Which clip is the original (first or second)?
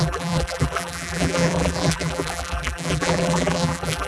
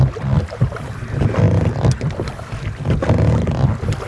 second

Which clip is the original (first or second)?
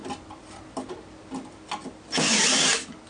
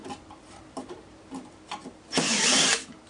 first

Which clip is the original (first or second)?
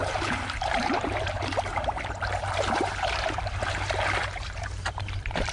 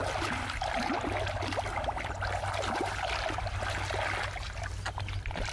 second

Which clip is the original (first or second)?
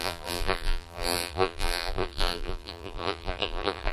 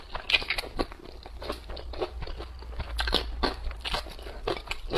second